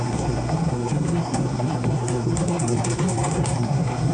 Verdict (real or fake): fake